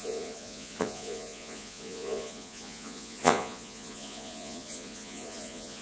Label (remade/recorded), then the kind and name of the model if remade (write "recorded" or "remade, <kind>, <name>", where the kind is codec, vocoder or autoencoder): remade, vocoder, Vocos